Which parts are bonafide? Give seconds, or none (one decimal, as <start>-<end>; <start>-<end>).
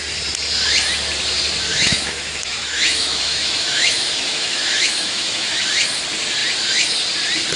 0.0-1.7; 5.6-7.6